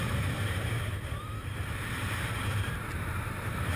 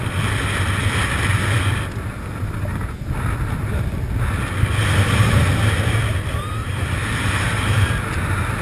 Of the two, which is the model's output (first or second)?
first